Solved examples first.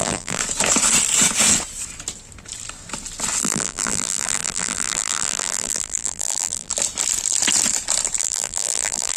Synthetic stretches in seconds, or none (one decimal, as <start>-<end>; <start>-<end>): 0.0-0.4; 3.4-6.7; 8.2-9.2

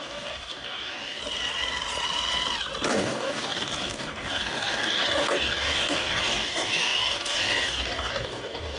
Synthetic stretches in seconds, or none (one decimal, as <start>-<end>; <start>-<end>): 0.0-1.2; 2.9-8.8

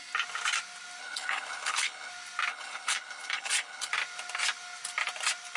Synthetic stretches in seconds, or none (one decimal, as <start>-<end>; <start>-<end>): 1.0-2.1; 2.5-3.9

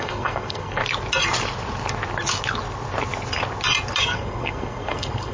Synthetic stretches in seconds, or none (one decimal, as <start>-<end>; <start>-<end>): 0.0-0.8; 4.0-5.3

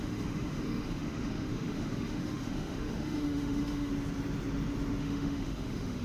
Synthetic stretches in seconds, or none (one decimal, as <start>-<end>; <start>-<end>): 0.0-3.9; 5.0-6.0

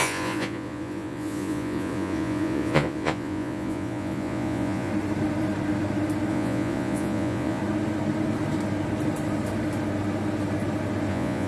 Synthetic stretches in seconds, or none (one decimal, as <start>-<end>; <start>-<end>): 0.0-4.9; 6.3-7.6; 11.1-11.5